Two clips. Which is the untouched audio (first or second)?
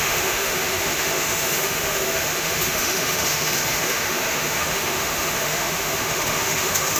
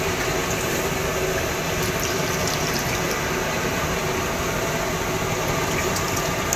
second